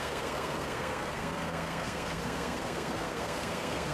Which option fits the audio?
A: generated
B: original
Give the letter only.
A